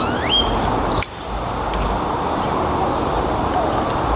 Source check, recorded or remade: recorded